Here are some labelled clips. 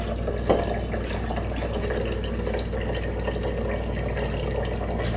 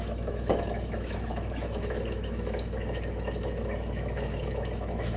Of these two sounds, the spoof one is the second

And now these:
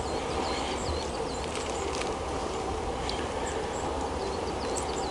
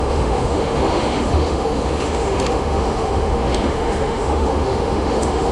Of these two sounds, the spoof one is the second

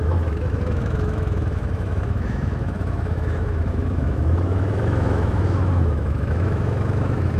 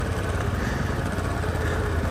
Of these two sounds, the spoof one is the first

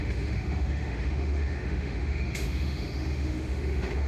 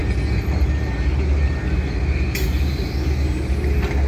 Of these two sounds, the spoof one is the first